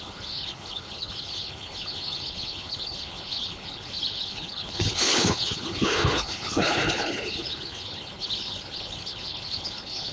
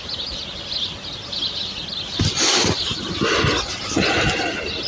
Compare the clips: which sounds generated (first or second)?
first